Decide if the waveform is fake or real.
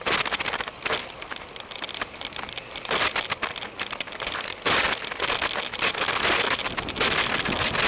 real